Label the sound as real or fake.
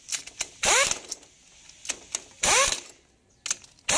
real